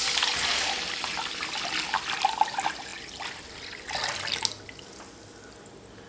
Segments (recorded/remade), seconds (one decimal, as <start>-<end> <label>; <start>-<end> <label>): 0.0-6.1 recorded